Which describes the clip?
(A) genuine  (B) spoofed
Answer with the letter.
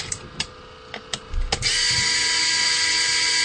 A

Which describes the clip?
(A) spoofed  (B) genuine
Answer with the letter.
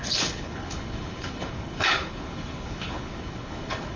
A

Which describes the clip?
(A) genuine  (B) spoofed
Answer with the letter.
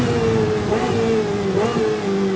A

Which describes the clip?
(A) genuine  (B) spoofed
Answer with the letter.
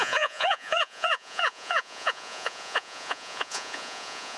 B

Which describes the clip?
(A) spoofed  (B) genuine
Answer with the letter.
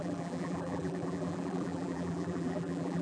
A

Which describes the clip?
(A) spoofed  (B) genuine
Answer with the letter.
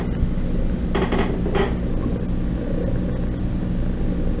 B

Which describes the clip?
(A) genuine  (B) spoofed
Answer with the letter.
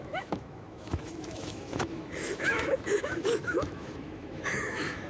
B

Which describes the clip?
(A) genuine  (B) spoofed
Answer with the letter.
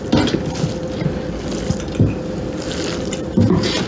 A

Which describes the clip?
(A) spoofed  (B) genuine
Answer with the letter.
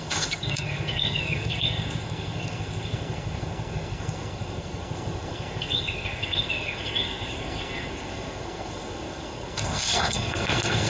A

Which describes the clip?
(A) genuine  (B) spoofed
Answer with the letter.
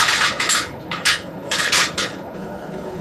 B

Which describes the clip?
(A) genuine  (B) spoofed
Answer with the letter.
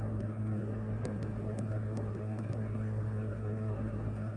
B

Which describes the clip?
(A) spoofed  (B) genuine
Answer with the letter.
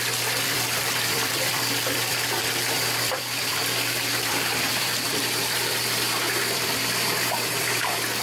A